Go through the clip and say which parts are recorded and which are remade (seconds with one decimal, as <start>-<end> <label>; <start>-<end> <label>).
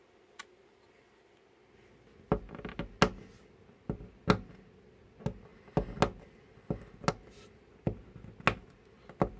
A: 0.0-9.4 recorded